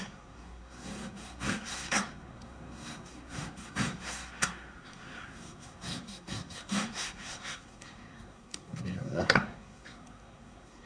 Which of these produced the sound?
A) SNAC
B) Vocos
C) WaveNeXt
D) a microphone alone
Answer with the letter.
A